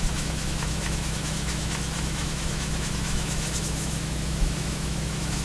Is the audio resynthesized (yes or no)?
yes